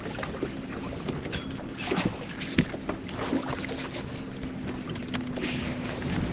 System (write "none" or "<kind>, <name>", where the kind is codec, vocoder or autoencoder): none